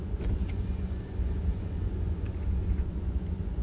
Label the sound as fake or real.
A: fake